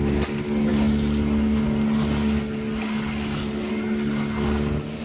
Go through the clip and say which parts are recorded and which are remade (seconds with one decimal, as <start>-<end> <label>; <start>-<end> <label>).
0.0-5.0 recorded